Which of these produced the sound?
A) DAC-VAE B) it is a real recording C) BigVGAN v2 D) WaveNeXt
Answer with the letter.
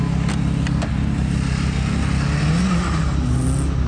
B